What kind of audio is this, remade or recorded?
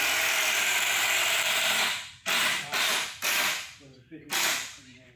remade